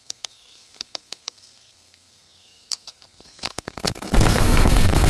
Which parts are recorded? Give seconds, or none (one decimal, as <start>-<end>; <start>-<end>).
none